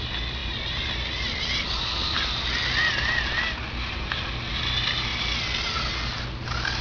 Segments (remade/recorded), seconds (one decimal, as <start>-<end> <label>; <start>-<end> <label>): 0.0-6.8 recorded